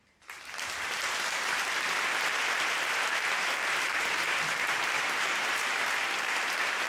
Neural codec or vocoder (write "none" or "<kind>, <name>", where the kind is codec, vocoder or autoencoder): vocoder, BigVGAN v2